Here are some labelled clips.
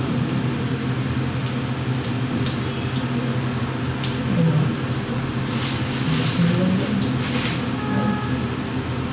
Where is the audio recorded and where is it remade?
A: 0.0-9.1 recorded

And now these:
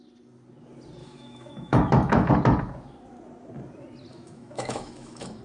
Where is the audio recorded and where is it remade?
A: 0.0-1.0 recorded; 1.0-2.3 remade; 2.3-4.1 recorded; 4.1-5.4 remade

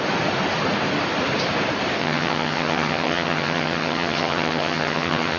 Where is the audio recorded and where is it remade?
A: 0.0-2.0 recorded; 2.0-5.4 remade

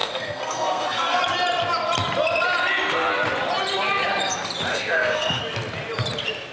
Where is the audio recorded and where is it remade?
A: 0.0-1.2 remade; 1.2-4.7 recorded; 4.7-5.4 remade; 5.4-6.5 recorded

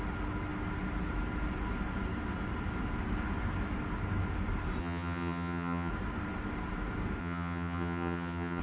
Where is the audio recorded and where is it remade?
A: 0.0-4.8 recorded; 4.8-5.9 remade; 5.9-7.2 recorded; 7.2-8.6 remade

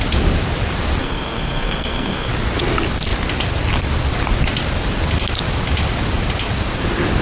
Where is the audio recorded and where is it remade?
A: 0.0-1.0 recorded; 1.0-2.3 remade; 2.3-7.2 recorded